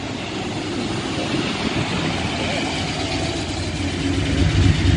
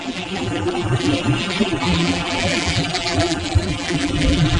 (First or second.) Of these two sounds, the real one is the first